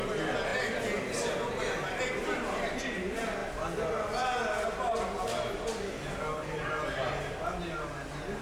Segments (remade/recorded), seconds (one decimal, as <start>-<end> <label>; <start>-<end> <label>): 0.0-8.4 recorded